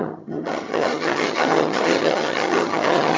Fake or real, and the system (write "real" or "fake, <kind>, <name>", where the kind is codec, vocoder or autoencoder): fake, vocoder, HiFi-GAN